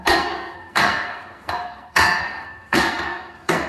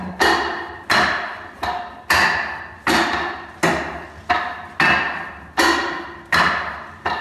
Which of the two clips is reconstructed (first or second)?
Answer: first